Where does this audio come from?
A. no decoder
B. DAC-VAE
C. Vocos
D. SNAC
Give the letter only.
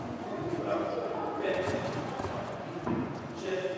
C